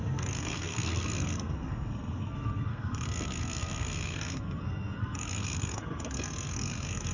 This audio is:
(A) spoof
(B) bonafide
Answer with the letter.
A